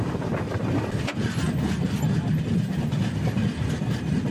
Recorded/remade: recorded